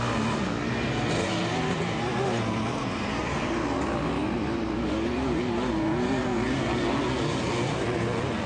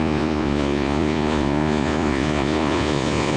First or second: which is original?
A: first